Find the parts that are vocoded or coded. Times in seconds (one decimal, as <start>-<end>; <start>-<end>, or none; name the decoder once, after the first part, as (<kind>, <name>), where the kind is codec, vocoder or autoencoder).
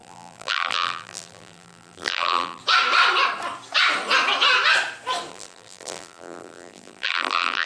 0.0-2.6 (vocoder, BigVGAN v2); 5.3-7.7